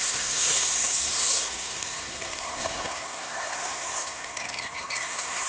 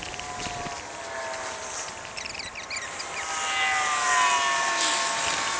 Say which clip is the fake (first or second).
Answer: first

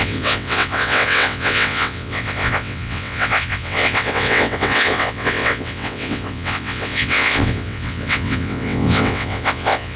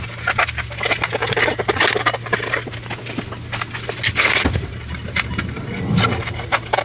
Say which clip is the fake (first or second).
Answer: first